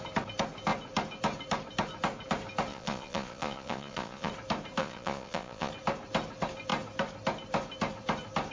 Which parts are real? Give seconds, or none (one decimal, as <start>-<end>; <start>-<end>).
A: 0.0-2.7; 4.3-4.8; 5.7-8.5